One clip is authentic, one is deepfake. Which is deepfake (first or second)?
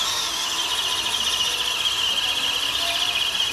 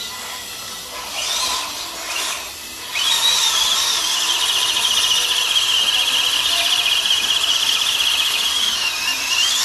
second